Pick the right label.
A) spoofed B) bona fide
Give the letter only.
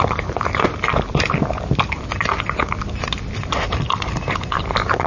B